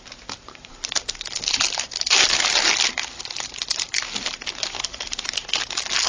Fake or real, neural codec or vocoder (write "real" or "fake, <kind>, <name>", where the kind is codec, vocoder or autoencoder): real